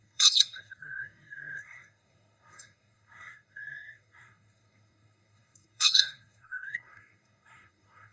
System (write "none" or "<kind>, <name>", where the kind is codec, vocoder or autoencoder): codec, SNAC